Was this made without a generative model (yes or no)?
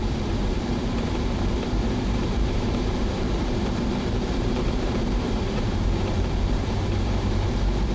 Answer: no